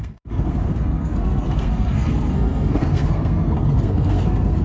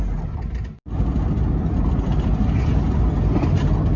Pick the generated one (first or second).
first